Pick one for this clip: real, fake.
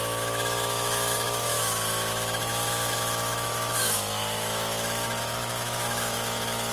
fake